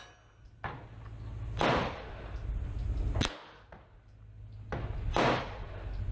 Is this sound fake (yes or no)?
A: no